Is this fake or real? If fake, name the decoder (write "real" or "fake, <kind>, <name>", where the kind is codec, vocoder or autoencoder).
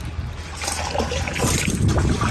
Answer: real